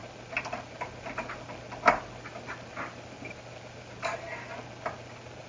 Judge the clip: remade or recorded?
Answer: recorded